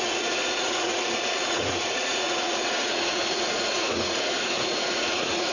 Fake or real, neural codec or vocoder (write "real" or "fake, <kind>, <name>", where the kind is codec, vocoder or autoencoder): fake, vocoder, Vocos